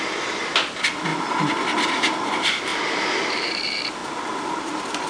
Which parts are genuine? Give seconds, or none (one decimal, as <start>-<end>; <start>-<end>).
2.7-3.2; 4.0-4.6